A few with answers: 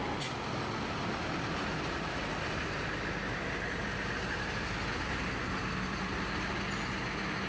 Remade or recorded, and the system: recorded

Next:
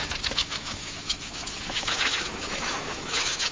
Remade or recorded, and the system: remade, autoencoder, DAC-VAE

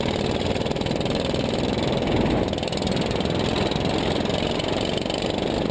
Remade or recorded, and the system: recorded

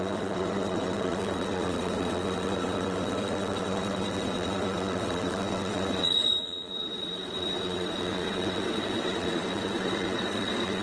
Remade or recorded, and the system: remade, vocoder, WaveNeXt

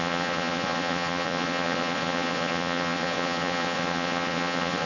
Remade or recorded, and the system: remade, vocoder, Vocos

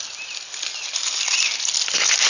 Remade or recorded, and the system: recorded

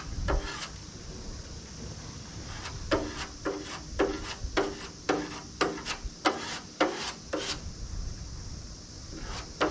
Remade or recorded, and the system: recorded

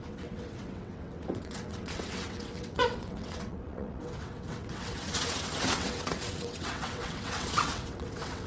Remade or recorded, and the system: remade, vocoder, WaveNeXt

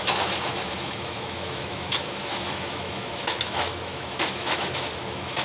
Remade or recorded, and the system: remade, autoencoder, DAC-VAE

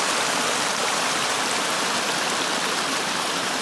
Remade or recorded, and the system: recorded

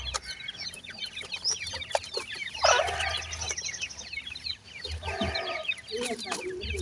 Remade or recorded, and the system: recorded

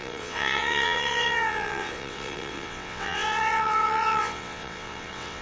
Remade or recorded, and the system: remade, vocoder, WaveNeXt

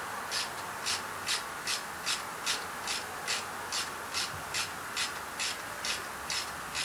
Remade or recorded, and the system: recorded